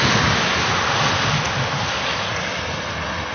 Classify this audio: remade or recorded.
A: recorded